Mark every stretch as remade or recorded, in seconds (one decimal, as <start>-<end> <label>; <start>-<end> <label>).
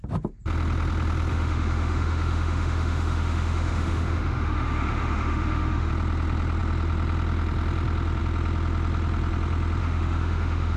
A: 0.0-1.3 recorded; 1.3-5.9 remade; 5.9-9.8 recorded; 9.8-10.8 remade